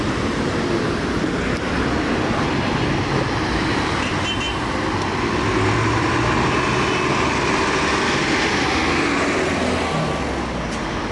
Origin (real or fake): real